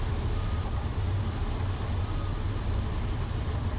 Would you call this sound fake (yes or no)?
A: yes